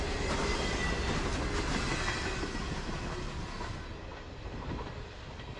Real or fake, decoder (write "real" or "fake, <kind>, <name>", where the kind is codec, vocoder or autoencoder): real